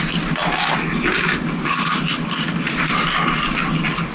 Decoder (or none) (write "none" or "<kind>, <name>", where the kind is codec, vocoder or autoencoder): none